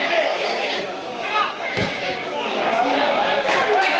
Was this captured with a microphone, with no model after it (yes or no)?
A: no